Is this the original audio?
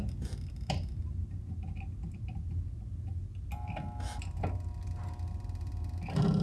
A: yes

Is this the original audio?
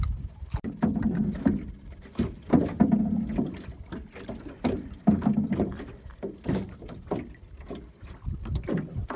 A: yes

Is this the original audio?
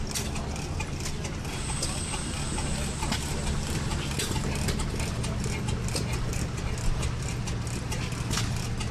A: yes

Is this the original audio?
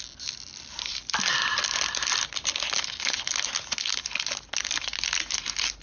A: yes